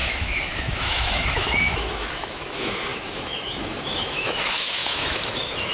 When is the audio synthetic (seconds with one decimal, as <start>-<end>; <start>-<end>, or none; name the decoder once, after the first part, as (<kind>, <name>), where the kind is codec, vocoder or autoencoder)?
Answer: 0.0-5.7 (autoencoder, DAC-VAE)